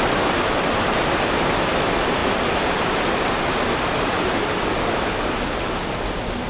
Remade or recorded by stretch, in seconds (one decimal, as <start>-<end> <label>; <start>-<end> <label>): 0.0-6.5 recorded